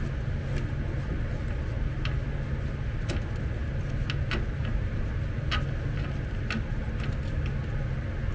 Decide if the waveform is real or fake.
real